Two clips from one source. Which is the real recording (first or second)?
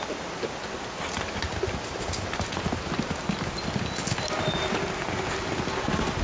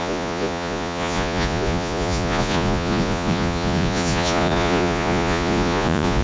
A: first